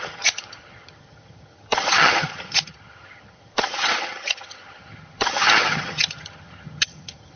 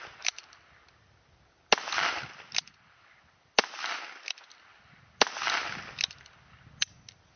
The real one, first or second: second